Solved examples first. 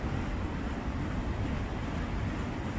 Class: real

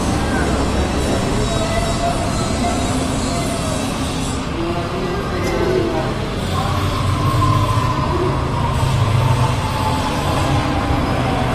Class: real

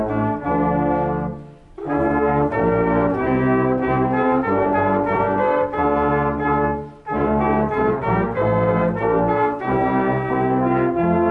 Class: real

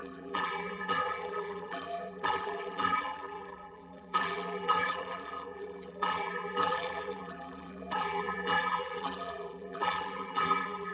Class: fake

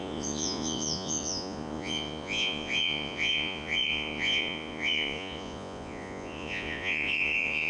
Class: fake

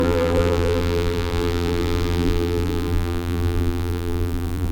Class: fake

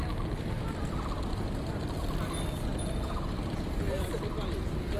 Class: real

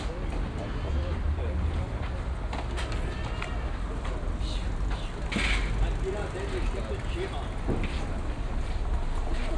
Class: real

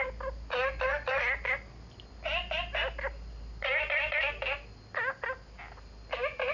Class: real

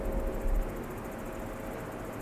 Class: real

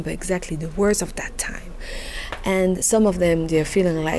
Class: real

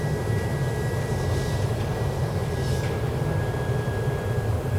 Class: real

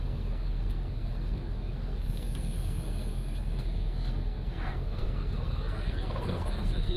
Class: fake